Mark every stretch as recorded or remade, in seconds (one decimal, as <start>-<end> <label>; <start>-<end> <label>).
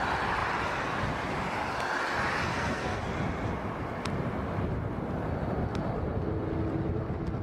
0.0-2.5 recorded; 2.5-3.0 remade; 3.0-7.4 recorded